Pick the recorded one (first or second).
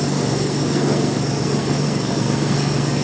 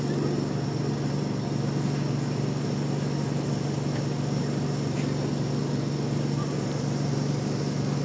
second